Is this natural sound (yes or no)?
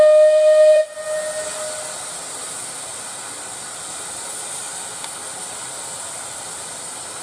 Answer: yes